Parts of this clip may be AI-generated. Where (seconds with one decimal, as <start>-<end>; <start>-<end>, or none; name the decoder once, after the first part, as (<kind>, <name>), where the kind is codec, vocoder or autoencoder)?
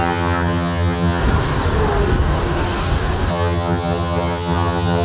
0.0-1.2 (vocoder, HiFi-GAN); 3.3-5.0